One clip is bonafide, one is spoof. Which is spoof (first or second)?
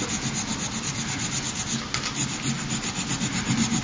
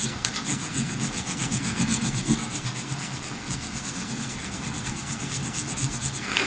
second